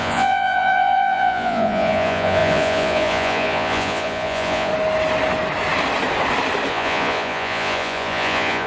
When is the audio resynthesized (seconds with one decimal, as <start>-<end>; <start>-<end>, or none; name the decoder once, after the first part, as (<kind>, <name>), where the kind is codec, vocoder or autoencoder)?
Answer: 0.0-4.7 (vocoder, Vocos); 6.7-8.7